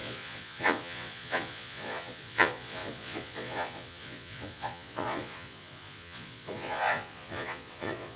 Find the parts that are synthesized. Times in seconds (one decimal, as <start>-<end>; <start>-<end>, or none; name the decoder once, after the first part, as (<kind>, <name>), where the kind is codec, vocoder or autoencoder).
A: 0.0-8.2 (vocoder, Vocos)

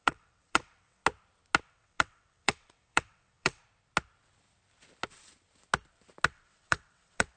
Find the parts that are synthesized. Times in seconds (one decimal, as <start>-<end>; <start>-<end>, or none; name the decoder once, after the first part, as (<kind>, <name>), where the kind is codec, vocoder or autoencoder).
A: 0.0-1.0 (vocoder, WaveNeXt); 1.6-3.6; 6.3-7.4

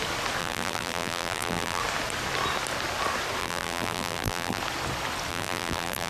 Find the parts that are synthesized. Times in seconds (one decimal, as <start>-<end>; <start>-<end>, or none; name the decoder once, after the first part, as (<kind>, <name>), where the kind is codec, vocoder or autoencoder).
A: 0.4-1.8 (vocoder, BigVGAN v2); 3.4-4.6; 5.3-6.1

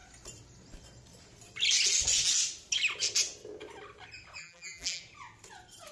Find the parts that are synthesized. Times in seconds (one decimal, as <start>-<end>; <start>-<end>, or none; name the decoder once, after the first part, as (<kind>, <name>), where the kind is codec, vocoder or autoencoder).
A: 4.4-5.0 (vocoder, BigVGAN v2)